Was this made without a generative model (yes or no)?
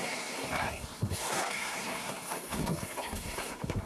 no